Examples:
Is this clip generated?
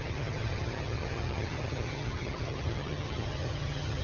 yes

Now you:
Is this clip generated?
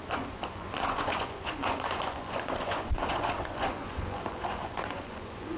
yes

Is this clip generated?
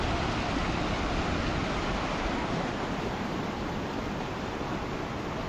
no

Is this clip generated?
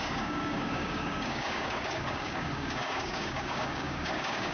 yes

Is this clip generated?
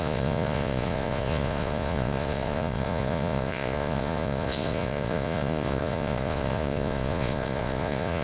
yes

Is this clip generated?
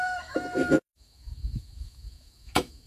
yes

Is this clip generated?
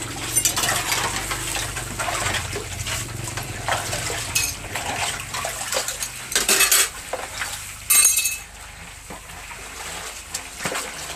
no